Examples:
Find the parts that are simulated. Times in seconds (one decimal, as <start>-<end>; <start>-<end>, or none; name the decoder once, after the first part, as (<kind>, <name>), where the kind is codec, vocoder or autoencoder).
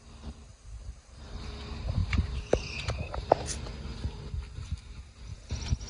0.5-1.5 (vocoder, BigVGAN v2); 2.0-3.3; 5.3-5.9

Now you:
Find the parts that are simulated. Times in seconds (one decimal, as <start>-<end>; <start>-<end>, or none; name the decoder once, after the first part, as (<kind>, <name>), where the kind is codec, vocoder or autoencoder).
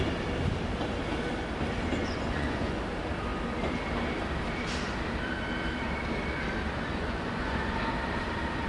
2.0-2.8 (vocoder, Vocos); 6.9-7.9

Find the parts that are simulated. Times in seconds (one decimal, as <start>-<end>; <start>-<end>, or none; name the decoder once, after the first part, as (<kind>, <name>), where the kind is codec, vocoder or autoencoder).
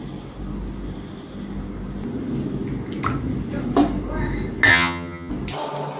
4.7-5.3 (vocoder, HiFi-GAN)